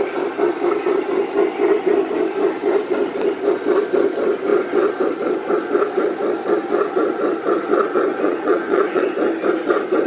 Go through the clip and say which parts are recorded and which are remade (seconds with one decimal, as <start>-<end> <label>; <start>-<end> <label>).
0.0-8.1 recorded; 8.1-9.0 remade; 9.0-10.1 recorded